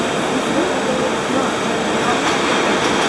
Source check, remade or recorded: recorded